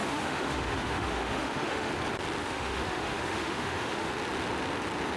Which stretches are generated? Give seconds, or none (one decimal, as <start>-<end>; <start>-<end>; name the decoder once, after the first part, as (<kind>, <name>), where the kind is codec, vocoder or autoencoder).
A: 0.0-1.9 (autoencoder, DAC-VAE); 2.4-4.1